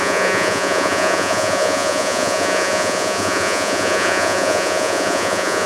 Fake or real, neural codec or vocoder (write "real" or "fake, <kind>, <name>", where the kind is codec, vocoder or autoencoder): fake, vocoder, Vocos